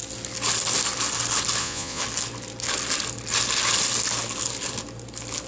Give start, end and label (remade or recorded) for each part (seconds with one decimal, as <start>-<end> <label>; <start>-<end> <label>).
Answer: 0.0-1.6 recorded; 1.6-2.0 remade; 2.0-5.5 recorded